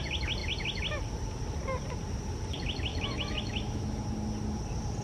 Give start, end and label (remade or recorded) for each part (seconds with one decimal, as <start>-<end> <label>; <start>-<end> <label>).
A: 0.0-2.9 recorded; 2.9-4.0 remade; 4.0-5.0 recorded